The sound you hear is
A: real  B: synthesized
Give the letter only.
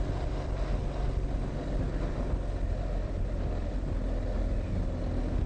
A